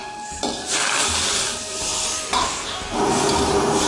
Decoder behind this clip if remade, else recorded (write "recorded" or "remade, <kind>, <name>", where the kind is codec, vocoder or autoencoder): recorded